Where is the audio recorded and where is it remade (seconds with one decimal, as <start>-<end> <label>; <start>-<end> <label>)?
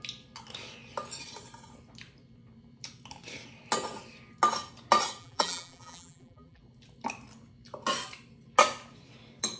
0.0-5.2 recorded; 5.2-6.6 remade; 6.6-9.6 recorded